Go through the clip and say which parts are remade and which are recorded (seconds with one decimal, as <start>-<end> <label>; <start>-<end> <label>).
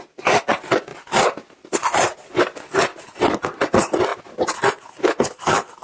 0.0-2.9 recorded; 2.9-3.4 remade; 3.4-5.8 recorded